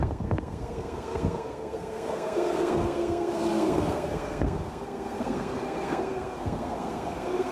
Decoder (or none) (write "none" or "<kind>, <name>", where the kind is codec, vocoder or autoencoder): codec, SNAC